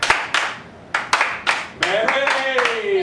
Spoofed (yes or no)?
no